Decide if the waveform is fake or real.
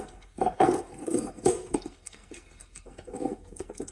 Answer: fake